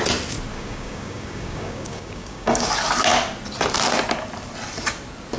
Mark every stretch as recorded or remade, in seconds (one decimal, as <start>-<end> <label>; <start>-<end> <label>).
0.0-0.5 recorded; 0.5-2.7 remade; 2.7-5.4 recorded